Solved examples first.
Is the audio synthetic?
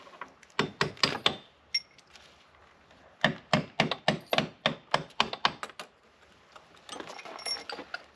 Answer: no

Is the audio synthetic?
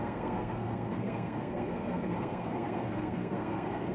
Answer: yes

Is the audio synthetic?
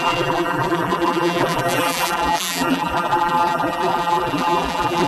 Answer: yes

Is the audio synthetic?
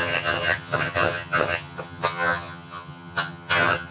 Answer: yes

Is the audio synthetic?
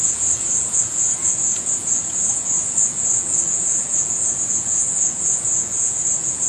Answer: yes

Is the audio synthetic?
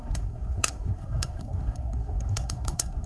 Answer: yes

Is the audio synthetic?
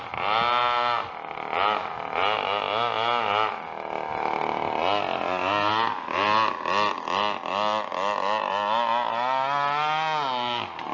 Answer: no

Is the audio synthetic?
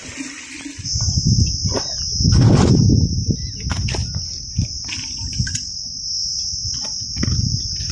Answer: no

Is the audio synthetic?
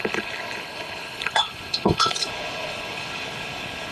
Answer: yes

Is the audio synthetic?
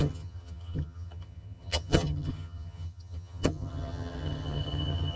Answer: yes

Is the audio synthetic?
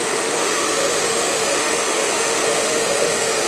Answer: yes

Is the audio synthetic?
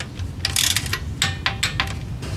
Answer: no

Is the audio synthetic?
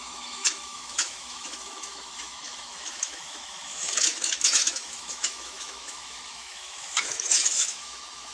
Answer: yes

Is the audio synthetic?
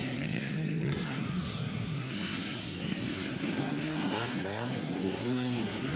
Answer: yes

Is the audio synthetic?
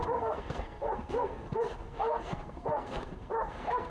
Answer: yes